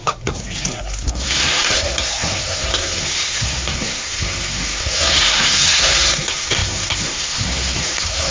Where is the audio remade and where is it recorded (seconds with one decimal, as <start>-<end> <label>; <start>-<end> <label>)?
0.0-8.3 remade